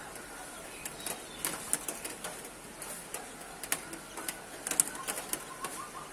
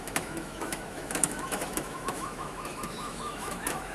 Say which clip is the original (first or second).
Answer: first